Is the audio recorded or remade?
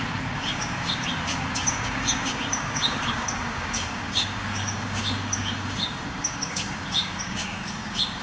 remade